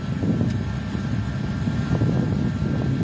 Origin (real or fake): real